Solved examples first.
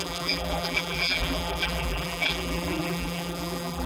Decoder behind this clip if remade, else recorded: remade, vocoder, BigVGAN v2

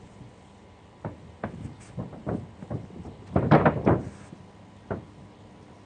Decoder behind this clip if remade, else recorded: recorded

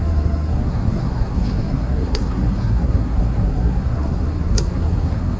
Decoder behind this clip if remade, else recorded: remade, codec, SNAC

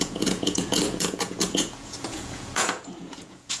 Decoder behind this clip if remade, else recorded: remade, vocoder, Vocos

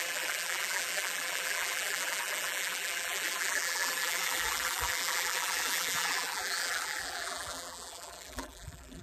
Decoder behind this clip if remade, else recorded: remade, vocoder, BigVGAN v2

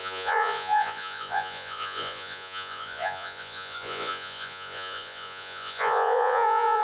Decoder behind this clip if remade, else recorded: remade, vocoder, Vocos